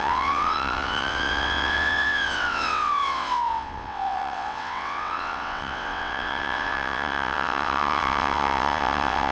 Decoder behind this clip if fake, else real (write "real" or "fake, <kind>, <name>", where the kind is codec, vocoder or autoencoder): fake, vocoder, WaveNeXt